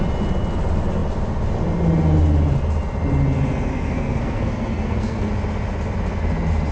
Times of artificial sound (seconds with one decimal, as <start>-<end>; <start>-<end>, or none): 3.7-5.3